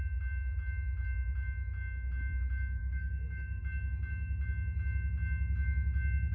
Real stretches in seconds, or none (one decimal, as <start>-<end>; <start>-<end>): 0.0-2.8; 3.6-6.3